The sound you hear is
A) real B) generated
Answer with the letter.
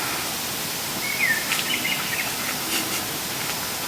A